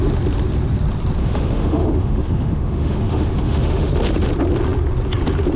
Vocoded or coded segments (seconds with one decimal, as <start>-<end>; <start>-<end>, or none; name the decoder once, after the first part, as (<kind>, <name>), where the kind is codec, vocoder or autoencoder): 1.2-3.9 (autoencoder, DAC-VAE)